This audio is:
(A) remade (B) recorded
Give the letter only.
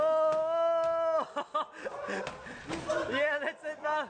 B